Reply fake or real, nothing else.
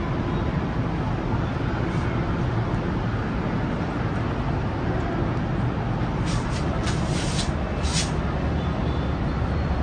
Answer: real